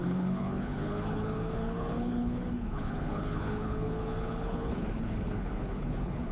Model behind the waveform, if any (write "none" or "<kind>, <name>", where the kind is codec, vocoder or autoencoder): codec, HILCodec